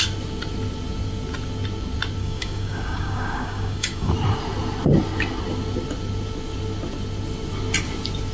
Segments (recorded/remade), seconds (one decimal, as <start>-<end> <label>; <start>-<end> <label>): 0.0-2.2 recorded; 2.2-4.1 remade; 4.1-8.3 recorded